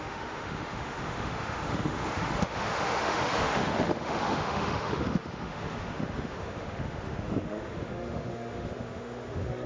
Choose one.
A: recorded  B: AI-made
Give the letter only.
B